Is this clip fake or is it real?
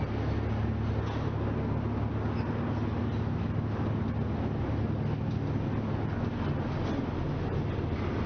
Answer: real